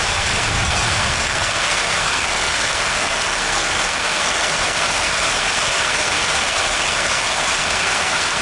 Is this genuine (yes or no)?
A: no